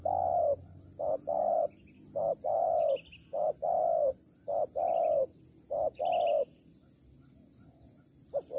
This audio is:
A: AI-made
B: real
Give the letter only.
B